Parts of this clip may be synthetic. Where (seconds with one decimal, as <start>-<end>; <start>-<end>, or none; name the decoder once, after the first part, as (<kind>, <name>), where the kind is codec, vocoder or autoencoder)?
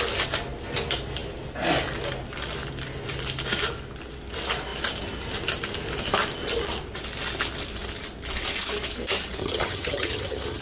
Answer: 9.4-10.6 (vocoder, HiFi-GAN)